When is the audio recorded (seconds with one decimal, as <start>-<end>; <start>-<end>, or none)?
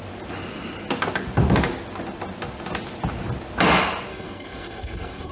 0.0-4.1